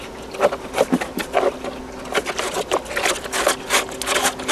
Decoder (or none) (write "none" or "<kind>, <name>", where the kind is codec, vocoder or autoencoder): none